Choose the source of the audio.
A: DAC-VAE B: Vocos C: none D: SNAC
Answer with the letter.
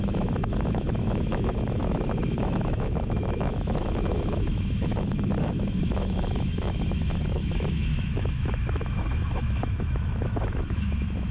A